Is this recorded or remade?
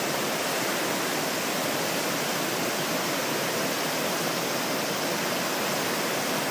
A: recorded